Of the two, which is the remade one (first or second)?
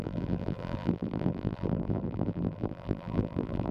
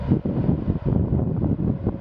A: first